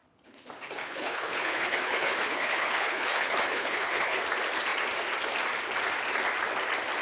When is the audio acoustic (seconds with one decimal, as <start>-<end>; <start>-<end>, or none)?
4.2-7.0